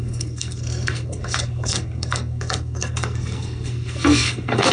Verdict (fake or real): fake